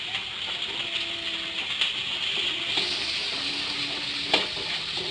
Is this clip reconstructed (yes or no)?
no